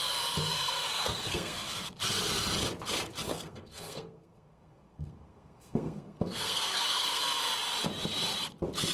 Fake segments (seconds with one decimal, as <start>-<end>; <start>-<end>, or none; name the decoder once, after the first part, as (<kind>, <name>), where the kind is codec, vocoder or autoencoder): 0.4-1.9 (codec, SNAC); 3.3-7.2